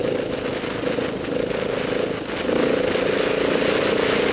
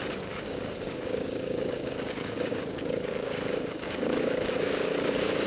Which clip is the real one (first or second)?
first